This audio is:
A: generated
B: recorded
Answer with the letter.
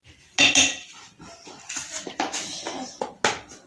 B